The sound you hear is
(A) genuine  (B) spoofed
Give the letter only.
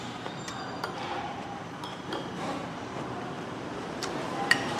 B